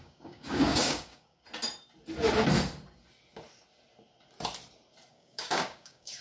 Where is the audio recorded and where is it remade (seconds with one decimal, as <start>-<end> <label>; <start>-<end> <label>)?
0.0-1.4 remade; 1.4-5.1 recorded; 5.1-6.2 remade